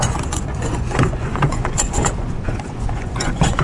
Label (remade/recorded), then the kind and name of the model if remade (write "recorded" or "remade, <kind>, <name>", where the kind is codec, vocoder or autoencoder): remade, vocoder, Vocos